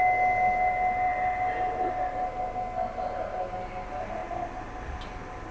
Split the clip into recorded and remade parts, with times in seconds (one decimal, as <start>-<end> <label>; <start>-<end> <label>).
0.0-5.5 recorded